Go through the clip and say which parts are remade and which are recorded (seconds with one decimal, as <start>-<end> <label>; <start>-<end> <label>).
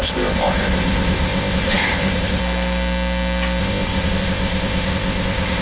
0.0-2.4 remade; 2.4-3.6 recorded; 3.6-5.6 remade